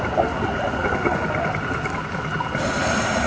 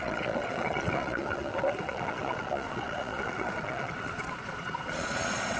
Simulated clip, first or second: second